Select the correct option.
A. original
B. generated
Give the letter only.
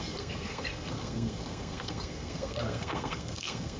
B